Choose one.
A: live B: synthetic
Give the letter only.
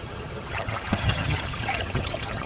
B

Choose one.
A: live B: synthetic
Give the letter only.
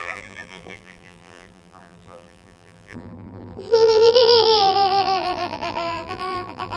B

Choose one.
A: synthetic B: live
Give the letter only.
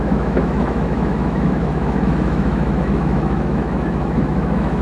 A